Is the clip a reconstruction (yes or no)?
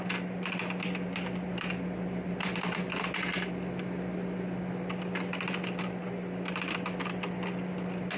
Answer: no